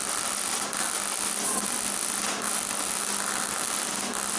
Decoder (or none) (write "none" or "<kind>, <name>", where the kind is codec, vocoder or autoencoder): none